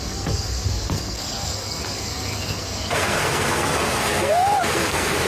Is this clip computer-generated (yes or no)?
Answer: yes